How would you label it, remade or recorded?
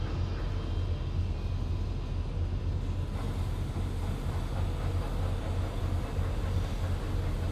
recorded